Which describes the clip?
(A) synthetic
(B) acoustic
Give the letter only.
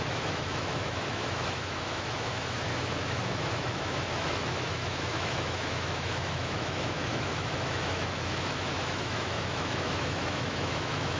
A